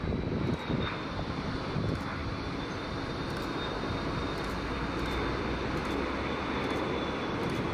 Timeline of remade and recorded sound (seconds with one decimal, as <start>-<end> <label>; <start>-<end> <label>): 0.0-2.2 recorded; 2.2-2.9 remade; 2.9-5.8 recorded; 5.8-6.5 remade; 6.5-7.7 recorded